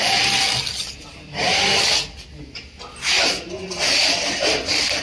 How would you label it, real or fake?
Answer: real